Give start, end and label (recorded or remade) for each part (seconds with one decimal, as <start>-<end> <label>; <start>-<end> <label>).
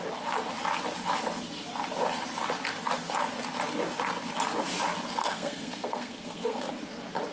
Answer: 0.0-5.2 recorded; 5.2-6.7 remade; 6.7-7.3 recorded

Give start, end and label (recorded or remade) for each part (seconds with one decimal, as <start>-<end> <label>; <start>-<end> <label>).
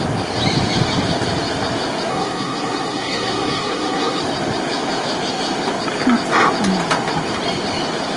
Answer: 0.0-2.1 recorded; 2.1-4.2 remade; 4.2-8.2 recorded